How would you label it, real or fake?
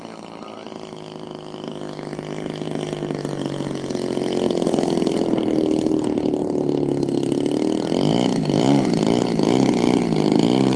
real